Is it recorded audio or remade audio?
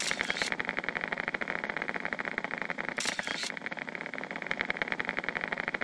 recorded